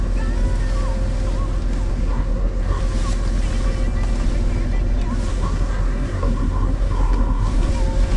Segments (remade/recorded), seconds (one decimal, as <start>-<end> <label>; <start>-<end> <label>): 0.0-1.9 recorded; 1.9-2.8 remade; 2.8-5.3 recorded; 5.3-7.7 remade; 7.7-8.2 recorded